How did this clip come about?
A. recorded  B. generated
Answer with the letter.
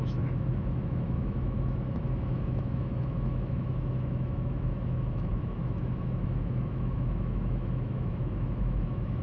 B